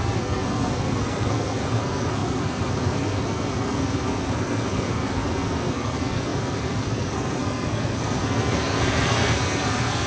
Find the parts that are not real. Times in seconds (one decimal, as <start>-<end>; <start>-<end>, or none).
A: 0.0-10.1

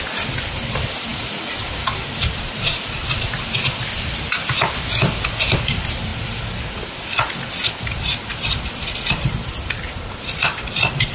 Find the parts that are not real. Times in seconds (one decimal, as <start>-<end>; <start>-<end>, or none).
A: 0.0-1.1; 3.8-6.1; 6.7-11.1

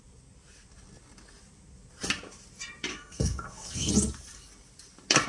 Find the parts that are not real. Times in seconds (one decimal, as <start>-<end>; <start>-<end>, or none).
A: 2.9-3.9

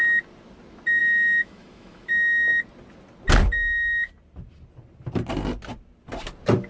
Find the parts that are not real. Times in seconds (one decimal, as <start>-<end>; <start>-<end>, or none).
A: 1.0-2.1

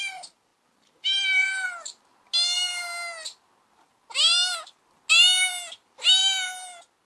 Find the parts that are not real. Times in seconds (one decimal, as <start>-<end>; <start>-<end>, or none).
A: none

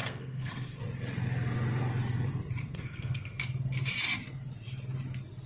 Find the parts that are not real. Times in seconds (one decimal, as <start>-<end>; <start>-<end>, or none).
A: 0.0-0.8; 2.6-3.4